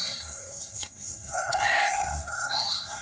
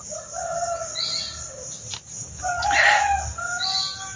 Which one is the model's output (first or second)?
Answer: first